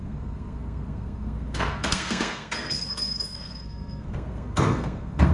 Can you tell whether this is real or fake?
fake